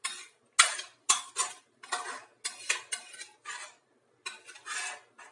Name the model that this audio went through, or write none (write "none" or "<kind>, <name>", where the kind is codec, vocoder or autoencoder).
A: none